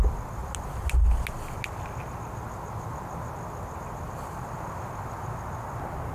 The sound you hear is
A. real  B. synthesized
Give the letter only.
A